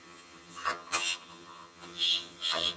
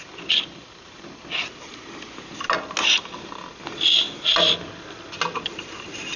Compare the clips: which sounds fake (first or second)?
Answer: first